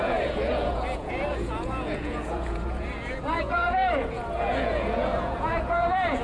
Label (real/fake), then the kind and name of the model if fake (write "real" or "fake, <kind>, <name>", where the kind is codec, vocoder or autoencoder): fake, vocoder, Vocos